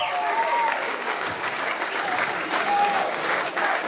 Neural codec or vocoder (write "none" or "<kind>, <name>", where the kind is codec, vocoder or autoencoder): codec, DAC